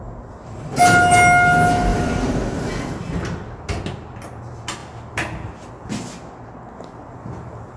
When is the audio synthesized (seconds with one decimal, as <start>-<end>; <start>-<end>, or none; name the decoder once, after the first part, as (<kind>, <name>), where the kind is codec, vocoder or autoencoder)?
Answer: 1.9-2.9 (vocoder, BigVGAN v2)